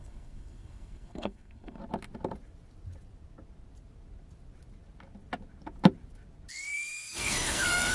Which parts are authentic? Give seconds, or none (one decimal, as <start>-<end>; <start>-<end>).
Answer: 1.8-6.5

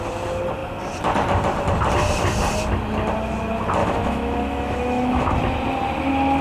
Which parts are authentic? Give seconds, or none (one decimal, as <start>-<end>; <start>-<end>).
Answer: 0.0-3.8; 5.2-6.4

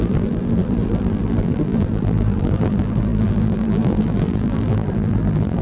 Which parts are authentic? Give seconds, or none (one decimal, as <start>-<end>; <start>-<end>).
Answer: none